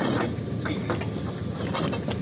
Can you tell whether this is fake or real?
real